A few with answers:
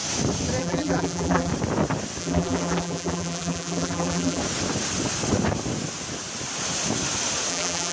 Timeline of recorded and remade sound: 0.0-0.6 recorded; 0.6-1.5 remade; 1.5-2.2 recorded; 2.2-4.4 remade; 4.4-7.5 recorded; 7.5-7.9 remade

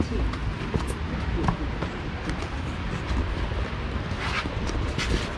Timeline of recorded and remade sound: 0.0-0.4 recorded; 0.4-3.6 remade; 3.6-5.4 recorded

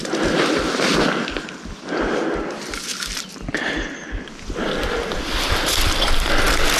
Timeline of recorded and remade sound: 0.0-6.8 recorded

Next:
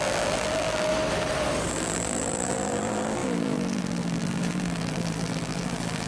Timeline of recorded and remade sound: 0.0-0.9 remade; 0.9-1.7 recorded; 1.7-6.1 remade

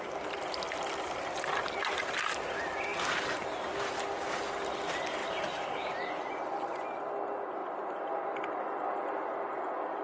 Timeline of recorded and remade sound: 0.0-5.2 recorded; 5.2-6.1 remade; 6.1-7.6 recorded; 7.6-8.4 remade; 8.4-10.0 recorded